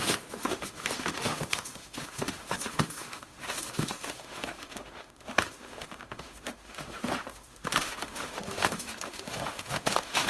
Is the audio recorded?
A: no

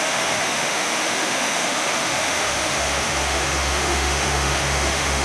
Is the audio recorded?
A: no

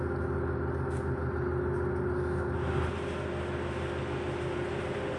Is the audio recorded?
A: yes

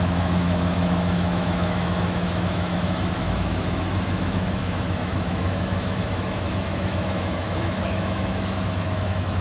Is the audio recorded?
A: no